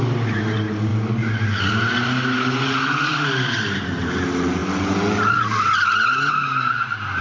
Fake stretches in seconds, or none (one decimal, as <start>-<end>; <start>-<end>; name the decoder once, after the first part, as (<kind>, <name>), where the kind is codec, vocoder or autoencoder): 3.1-3.8 (vocoder, BigVGAN v2); 4.6-5.3

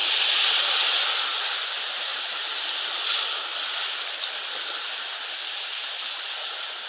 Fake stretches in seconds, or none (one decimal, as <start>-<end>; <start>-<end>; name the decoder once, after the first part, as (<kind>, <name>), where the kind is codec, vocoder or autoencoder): 1.7-2.1 (vocoder, BigVGAN v2); 6.2-6.9

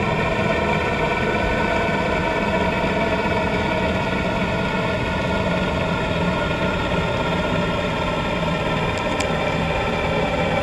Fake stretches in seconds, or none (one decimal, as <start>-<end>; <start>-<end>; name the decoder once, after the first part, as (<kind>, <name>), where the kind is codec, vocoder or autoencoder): 0.0-2.2 (vocoder, BigVGAN v2); 5.4-10.6

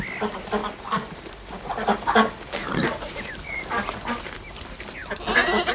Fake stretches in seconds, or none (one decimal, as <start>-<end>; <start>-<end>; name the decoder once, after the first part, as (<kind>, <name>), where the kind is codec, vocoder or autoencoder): 0.6-1.5 (vocoder, BigVGAN v2); 2.6-3.6